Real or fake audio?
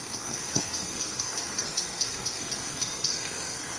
fake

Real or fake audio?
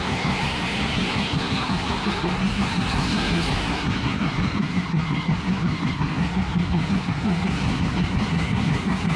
fake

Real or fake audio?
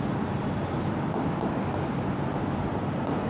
real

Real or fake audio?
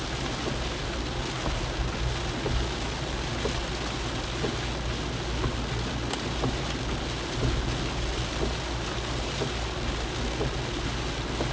real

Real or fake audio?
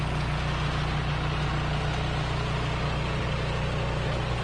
real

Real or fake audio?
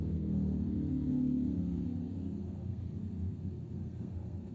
fake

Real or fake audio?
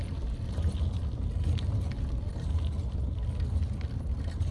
real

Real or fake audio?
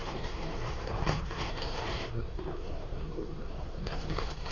fake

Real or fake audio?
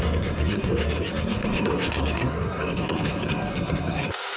fake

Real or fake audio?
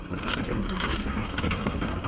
fake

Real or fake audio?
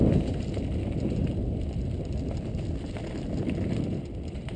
real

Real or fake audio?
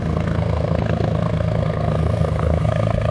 fake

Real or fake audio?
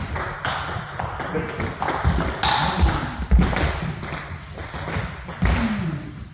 real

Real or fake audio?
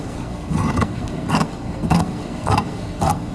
fake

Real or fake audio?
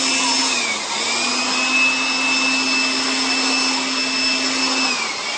real